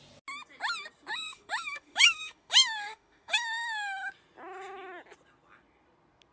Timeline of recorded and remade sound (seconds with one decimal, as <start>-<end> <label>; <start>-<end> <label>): 0.0-1.1 recorded; 1.1-4.1 remade; 4.1-6.3 recorded